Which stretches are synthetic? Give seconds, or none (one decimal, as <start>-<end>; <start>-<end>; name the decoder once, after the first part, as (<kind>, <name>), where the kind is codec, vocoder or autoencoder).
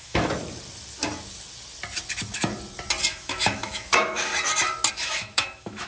0.0-0.4 (autoencoder, DAC-VAE); 3.1-4.3; 4.9-5.9